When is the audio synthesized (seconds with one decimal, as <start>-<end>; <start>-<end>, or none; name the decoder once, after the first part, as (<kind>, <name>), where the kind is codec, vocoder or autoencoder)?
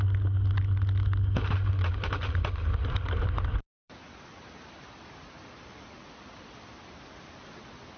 3.6-7.0 (vocoder, BigVGAN v2)